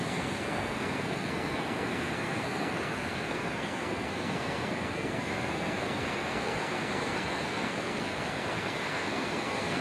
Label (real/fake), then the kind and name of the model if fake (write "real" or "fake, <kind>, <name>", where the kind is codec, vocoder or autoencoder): fake, codec, SNAC